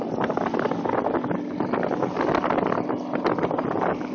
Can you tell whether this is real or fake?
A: real